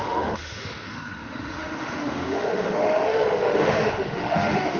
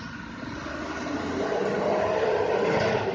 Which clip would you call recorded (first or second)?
second